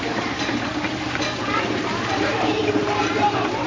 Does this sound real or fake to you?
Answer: fake